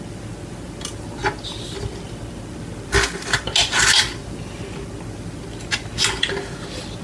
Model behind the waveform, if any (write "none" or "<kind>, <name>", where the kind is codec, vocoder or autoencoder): none